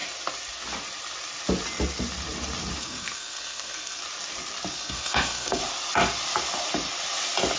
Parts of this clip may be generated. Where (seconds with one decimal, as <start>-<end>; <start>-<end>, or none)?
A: 2.8-4.0; 4.7-5.6